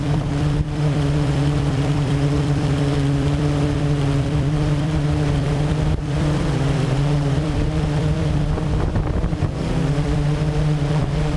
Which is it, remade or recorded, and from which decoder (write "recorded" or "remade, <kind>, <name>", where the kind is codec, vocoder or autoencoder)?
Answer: remade, vocoder, BigVGAN v2